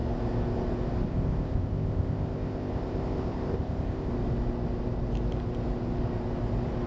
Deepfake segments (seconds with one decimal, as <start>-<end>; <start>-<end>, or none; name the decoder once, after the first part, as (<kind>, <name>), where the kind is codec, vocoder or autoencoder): 1.1-4.1 (codec, ZipCodec)